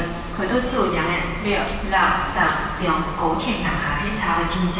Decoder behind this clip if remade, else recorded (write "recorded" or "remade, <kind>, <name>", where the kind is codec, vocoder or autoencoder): recorded